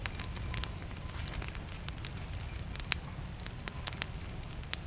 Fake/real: real